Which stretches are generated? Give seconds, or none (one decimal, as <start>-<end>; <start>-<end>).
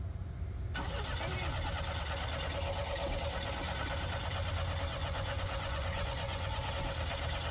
5.0-6.7